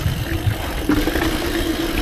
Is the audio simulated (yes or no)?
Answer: no